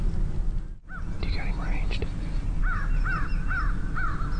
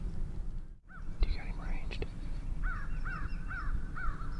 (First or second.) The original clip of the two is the first